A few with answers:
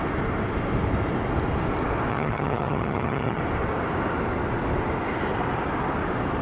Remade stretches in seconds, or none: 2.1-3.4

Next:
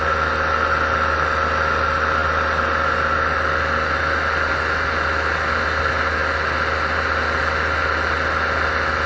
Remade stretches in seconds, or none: none